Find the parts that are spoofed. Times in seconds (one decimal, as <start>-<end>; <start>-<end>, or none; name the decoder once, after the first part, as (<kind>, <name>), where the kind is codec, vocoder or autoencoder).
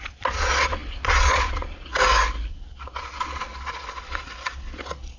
0.0-1.9 (vocoder, Vocos); 2.5-5.2